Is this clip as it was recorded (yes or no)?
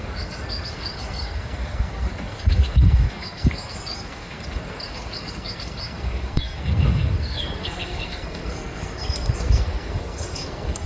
no